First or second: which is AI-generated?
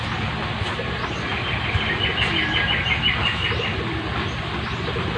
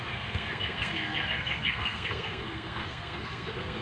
second